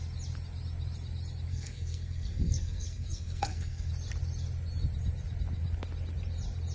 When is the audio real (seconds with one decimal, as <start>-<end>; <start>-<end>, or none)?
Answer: 0.0-1.5; 3.9-6.7